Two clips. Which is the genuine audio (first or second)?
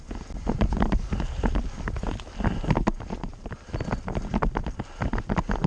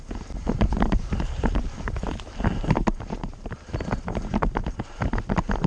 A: first